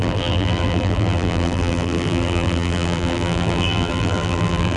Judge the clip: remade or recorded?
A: remade